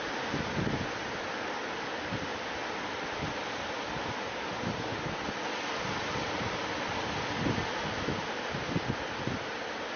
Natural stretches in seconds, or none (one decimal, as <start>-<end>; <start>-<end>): 0.0-10.0